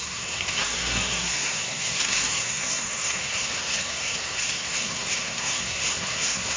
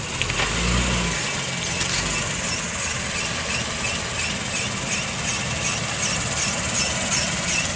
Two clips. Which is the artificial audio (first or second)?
first